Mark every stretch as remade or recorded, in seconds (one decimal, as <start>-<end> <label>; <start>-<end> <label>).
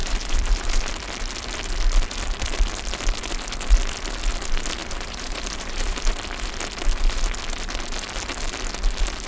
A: 0.0-0.9 remade; 0.9-4.8 recorded; 4.8-6.0 remade; 6.0-9.3 recorded